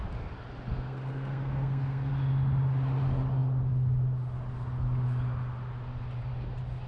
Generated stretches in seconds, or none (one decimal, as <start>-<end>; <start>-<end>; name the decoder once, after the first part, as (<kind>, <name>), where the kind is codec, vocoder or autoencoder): 0.7-2.1 (codec, SNAC)

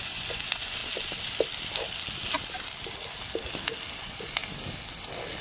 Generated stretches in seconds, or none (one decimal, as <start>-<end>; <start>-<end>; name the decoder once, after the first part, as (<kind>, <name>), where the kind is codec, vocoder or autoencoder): 0.0-0.8 (vocoder, Vocos); 4.0-4.4